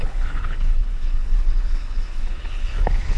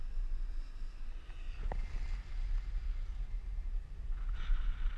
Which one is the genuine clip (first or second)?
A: second